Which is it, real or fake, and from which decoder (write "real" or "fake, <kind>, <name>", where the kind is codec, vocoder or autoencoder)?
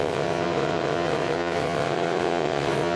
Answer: fake, vocoder, WaveNeXt